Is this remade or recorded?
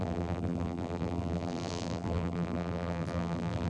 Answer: remade